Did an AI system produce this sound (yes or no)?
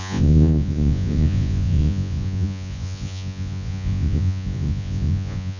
yes